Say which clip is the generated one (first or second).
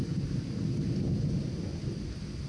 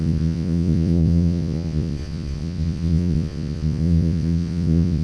second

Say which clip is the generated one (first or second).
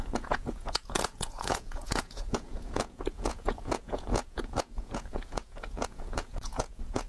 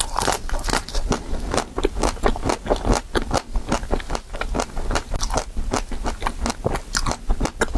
first